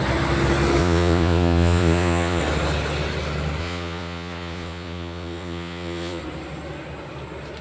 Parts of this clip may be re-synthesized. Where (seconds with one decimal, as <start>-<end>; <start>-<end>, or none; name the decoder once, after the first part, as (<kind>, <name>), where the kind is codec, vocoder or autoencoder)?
0.8-2.4 (vocoder, Vocos); 3.6-6.2